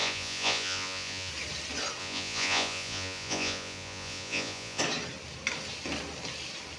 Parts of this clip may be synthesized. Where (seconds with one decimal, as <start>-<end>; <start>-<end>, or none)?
0.0-1.3; 2.0-4.8